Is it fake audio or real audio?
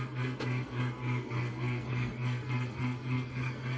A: fake